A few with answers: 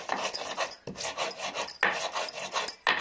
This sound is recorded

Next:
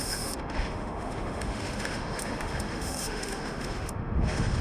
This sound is remade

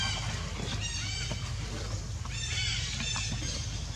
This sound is recorded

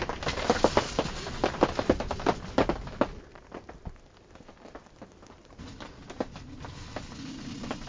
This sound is recorded